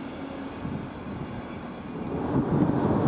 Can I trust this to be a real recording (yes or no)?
yes